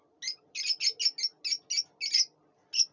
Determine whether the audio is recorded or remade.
recorded